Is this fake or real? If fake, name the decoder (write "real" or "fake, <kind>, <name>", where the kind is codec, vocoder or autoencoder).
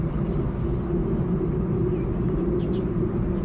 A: real